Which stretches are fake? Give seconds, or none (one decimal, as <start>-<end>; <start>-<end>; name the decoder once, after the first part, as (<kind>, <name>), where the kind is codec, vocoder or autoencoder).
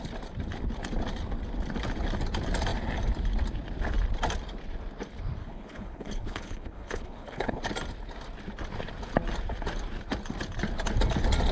5.4-7.6 (codec, HILCodec)